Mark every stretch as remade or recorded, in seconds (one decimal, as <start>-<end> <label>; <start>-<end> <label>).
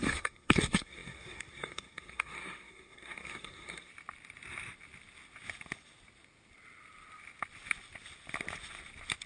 0.0-3.9 remade; 3.9-9.3 recorded